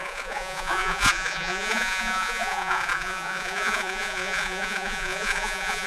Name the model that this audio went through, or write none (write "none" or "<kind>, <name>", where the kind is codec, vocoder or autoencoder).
vocoder, Vocos